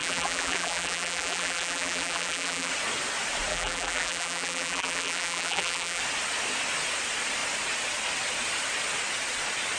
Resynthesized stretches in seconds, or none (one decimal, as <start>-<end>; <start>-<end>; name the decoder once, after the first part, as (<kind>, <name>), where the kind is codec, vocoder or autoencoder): 0.0-2.7 (vocoder, BigVGAN v2); 3.5-6.0